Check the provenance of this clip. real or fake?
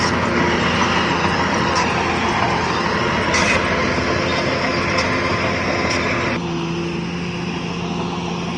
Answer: real